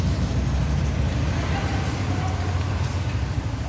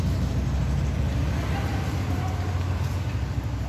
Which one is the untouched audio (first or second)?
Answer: second